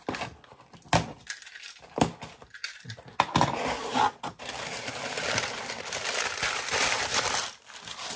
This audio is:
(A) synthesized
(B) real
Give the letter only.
B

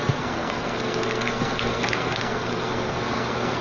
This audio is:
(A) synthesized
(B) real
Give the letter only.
A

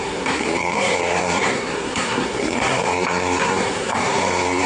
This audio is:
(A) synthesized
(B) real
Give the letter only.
A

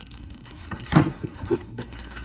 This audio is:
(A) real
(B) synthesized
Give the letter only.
B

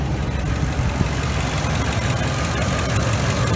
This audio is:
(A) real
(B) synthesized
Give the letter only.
A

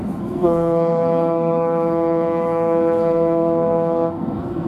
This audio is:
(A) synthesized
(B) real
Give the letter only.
A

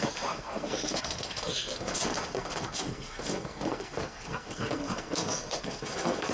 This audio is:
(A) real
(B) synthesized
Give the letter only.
B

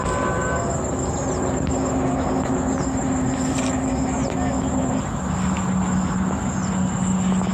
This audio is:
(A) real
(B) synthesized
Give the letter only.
A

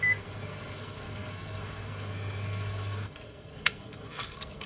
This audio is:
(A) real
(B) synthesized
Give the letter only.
B